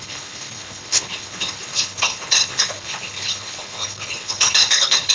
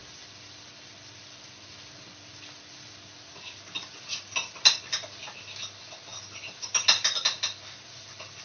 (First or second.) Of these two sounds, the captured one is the second